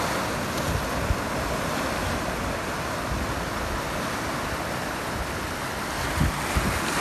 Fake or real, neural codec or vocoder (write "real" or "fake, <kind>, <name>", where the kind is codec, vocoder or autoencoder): real